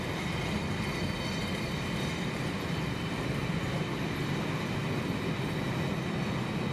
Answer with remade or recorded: recorded